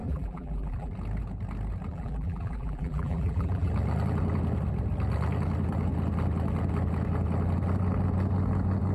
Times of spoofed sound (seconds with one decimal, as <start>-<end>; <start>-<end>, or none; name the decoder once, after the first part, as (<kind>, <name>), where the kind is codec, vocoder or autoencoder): 0.0-0.9 (vocoder, BigVGAN v2); 1.9-3.7

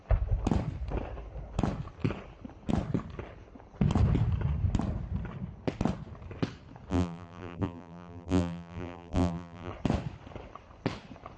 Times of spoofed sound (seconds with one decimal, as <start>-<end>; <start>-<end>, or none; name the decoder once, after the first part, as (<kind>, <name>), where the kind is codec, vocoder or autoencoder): 6.9-9.7 (vocoder, BigVGAN v2)